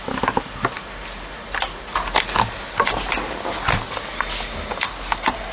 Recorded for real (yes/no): yes